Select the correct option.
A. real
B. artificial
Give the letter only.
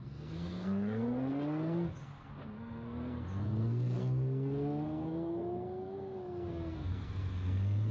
B